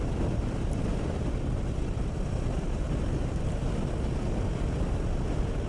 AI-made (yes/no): no